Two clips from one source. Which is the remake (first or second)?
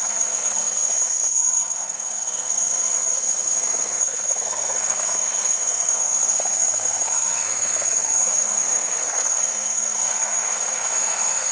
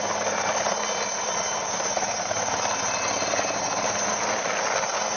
first